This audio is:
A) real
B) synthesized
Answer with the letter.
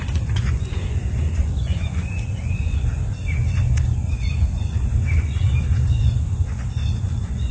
B